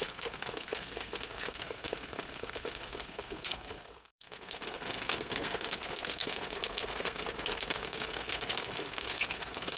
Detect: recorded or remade remade